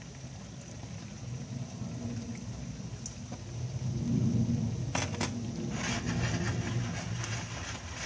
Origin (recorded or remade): recorded